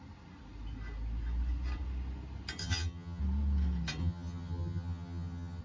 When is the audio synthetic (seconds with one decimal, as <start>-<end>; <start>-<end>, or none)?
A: 2.6-3.2; 4.0-5.6